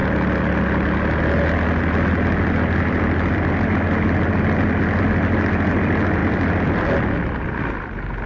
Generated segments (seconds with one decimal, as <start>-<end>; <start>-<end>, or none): 6.2-7.8